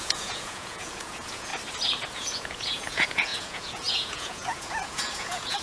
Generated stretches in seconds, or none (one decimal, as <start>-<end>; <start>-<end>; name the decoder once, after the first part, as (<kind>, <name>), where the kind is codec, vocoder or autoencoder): 0.0-1.5 (vocoder, Vocos); 2.1-5.6